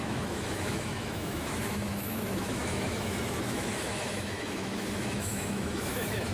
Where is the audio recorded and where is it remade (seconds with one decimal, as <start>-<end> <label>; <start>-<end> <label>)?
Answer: 0.0-6.3 remade